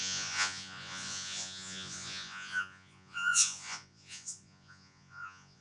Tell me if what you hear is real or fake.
fake